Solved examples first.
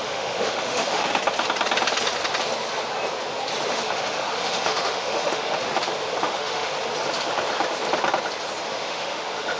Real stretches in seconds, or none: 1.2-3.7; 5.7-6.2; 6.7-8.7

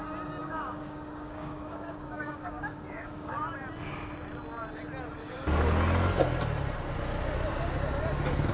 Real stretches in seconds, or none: 0.0-0.4; 3.4-8.5

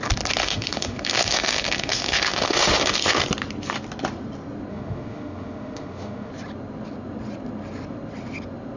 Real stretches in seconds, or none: 0.0-0.4; 3.2-4.7; 6.3-8.8

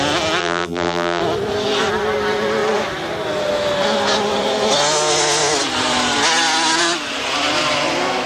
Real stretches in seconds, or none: 0.0-0.4; 1.2-8.3

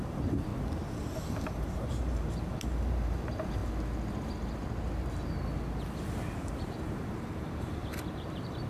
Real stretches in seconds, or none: 0.5-1.3; 3.6-6.0

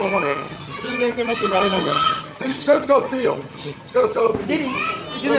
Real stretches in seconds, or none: 4.3-5.4